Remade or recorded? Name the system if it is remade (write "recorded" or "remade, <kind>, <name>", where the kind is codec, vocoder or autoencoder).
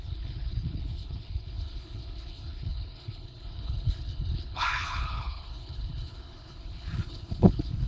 remade, codec, HILCodec